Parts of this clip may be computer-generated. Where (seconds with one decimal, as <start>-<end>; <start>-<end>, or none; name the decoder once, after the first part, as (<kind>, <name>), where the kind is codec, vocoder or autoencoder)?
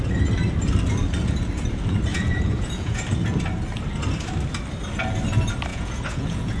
2.1-3.0 (vocoder, Vocos); 5.7-6.6